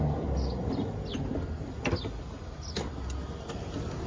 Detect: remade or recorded recorded